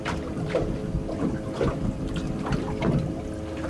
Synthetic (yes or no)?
no